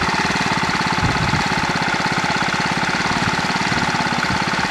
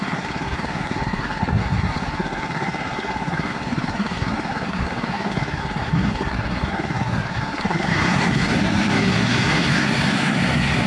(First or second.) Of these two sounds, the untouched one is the first